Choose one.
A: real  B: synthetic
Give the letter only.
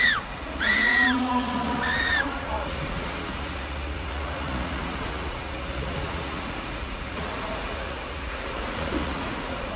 B